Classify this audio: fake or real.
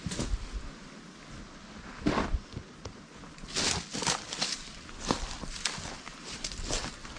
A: real